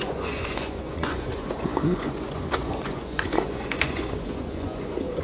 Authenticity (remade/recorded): remade